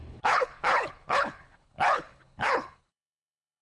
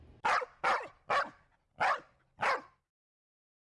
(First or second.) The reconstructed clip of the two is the first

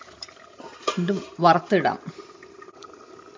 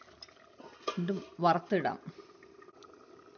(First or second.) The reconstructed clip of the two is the first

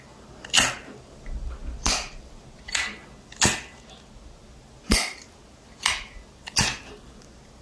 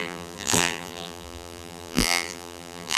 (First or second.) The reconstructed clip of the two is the second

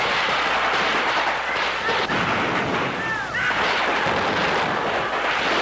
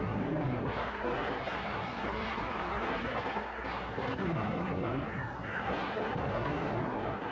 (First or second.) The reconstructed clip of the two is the second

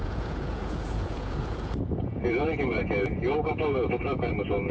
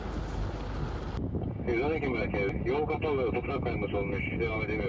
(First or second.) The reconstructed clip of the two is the first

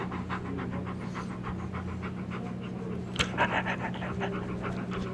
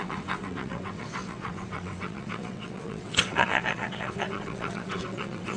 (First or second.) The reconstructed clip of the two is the second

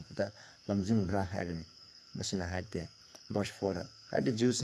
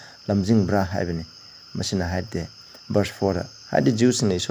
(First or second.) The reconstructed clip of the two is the first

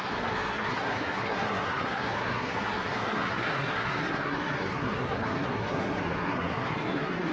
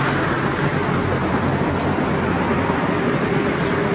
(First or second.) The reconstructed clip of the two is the first